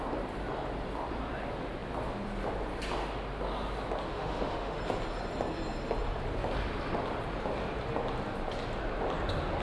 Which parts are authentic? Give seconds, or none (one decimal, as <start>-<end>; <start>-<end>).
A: 0.0-4.1; 4.8-9.6